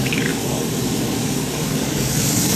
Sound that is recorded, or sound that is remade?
remade